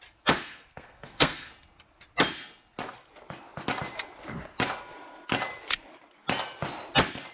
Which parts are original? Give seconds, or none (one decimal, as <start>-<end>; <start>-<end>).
0.0-0.4; 1.5-7.3